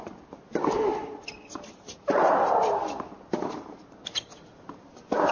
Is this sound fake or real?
real